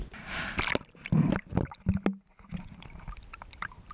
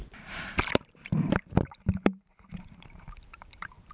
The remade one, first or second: second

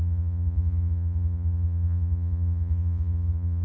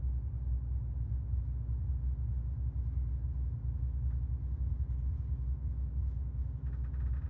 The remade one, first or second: first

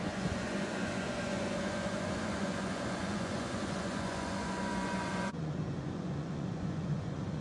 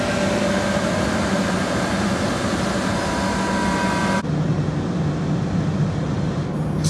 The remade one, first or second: first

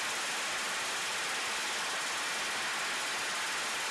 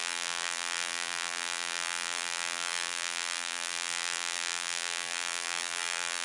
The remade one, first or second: second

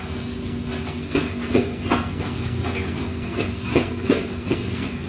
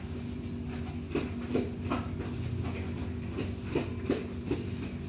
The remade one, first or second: first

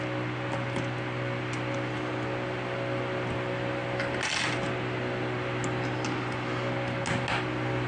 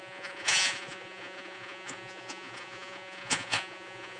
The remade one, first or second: second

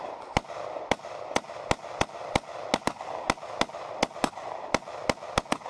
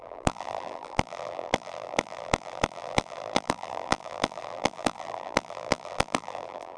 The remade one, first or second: second